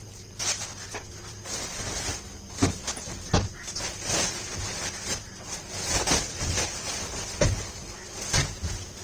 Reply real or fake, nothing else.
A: real